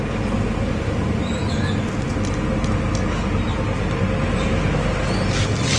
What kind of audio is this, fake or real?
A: real